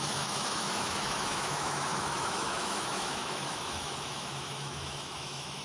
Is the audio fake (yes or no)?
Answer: yes